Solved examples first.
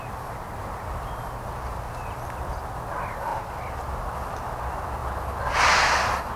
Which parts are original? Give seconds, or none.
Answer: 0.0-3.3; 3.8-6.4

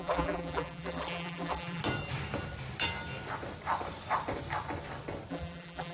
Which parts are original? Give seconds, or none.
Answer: 1.8-5.3

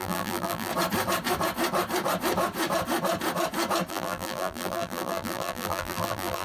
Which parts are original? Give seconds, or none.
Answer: 0.7-3.9

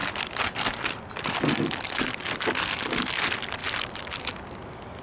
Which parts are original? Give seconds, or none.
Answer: 3.0-5.0

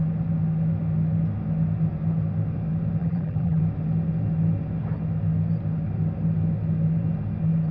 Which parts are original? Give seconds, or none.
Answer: 0.0-3.0; 3.6-7.7

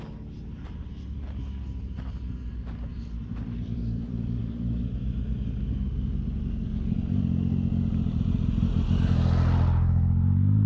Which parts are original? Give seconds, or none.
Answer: 0.0-2.9; 4.4-10.7

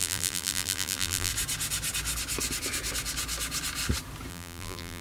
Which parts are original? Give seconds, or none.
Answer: 1.3-4.3